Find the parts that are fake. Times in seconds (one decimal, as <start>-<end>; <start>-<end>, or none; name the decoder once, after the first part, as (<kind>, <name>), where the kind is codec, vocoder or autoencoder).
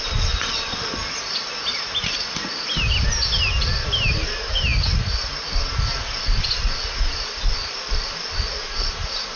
none